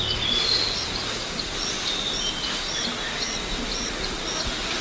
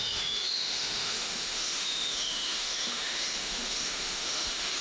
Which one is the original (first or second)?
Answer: first